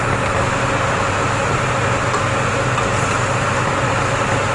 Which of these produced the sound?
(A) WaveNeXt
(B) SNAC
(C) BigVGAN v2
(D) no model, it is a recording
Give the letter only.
D